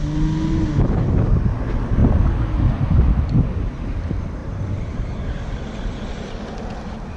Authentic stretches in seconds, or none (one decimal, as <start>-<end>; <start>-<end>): 0.0-4.4; 6.1-7.2